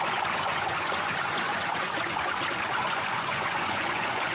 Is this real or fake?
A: fake